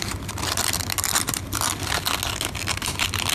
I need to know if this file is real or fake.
real